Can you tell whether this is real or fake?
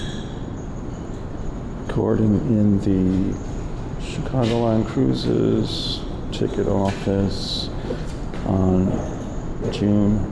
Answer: real